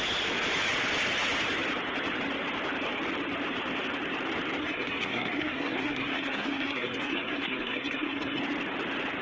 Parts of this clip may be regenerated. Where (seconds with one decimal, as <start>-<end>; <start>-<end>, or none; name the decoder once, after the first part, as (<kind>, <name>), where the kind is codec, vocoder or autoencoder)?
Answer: 4.6-8.4 (codec, SNAC)